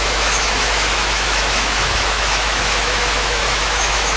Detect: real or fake fake